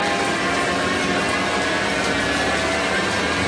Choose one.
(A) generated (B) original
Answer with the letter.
B